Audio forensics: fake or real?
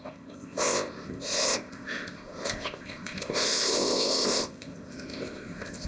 fake